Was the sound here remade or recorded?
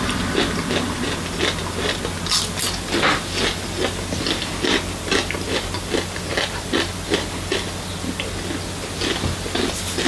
recorded